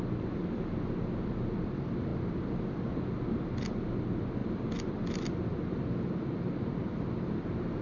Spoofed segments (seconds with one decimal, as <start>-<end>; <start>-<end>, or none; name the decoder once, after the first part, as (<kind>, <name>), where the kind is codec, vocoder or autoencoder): none